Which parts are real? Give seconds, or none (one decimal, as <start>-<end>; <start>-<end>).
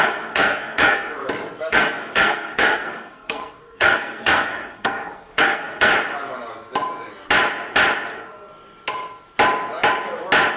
1.2-1.7; 5.9-10.6